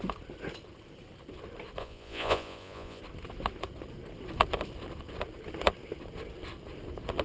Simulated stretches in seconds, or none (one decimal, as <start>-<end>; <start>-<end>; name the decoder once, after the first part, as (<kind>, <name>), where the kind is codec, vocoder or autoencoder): 1.8-3.0 (vocoder, Vocos)